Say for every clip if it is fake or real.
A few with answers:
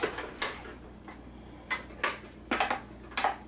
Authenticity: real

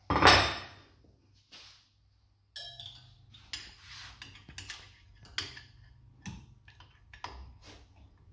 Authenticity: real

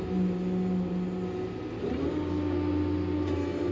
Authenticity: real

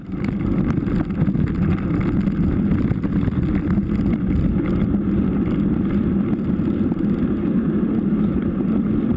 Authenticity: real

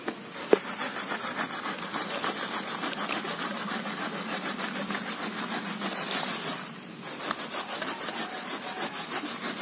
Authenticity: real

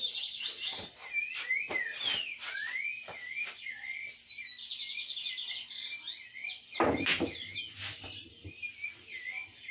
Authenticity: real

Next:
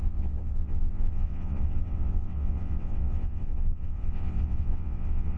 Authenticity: fake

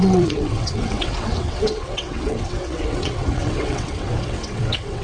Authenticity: fake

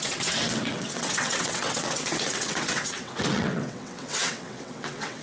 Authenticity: fake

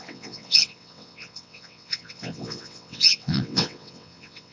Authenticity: fake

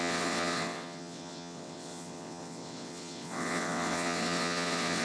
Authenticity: fake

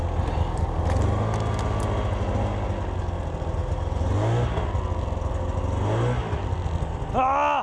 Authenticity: real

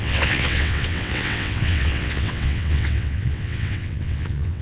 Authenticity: fake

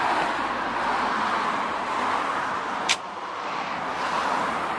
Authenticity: real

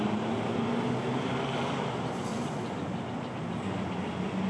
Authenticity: real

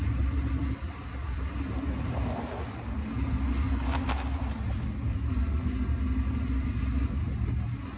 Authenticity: real